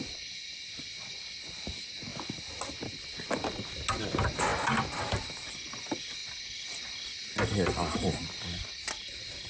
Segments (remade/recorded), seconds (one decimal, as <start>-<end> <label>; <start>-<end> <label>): 0.0-9.5 recorded